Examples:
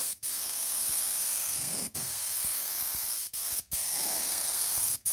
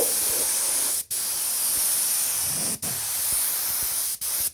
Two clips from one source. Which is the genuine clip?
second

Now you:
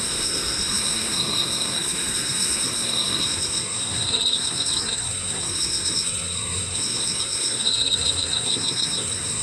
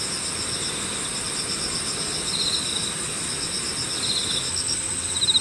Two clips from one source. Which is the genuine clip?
second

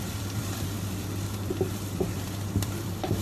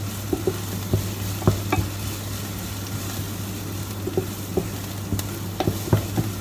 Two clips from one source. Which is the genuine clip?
second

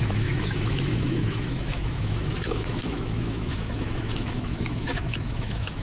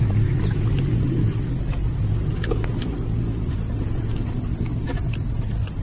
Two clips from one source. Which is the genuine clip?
second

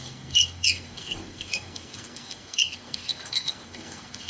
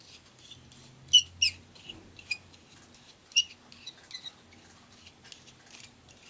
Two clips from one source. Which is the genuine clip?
second